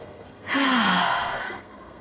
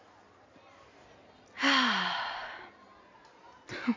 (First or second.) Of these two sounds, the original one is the second